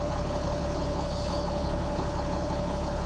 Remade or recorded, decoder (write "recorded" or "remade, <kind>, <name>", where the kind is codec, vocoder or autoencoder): remade, codec, HILCodec